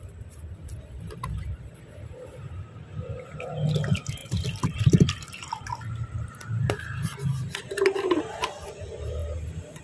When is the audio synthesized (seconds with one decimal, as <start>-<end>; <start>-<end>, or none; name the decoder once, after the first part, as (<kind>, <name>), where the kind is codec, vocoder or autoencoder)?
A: none